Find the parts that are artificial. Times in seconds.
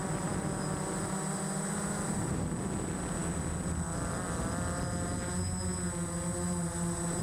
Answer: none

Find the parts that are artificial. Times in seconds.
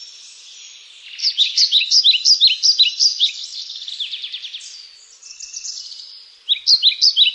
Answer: 1.2-2.0 (codec, HILCodec); 3.1-3.9; 5.3-5.8